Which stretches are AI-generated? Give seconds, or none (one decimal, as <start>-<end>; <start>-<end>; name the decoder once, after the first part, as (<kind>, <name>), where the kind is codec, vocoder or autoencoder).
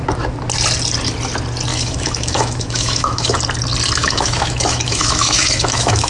1.7-3.4 (autoencoder, DAC-VAE); 4.0-6.1